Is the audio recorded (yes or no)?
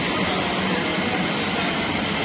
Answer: yes